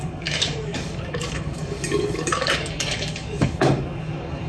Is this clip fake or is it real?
fake